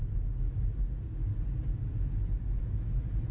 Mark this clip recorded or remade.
recorded